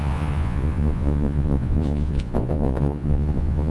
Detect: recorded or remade remade